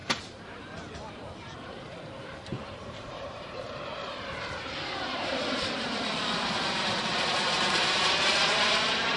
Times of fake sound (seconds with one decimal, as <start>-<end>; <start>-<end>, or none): 0.0-9.2